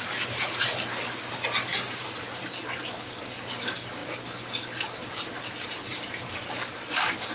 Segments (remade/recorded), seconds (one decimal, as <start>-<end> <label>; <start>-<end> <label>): 0.0-1.7 recorded; 1.7-2.4 remade; 2.4-7.3 recorded